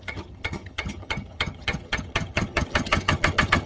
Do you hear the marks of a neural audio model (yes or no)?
yes